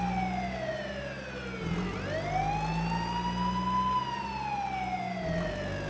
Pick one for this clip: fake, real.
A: real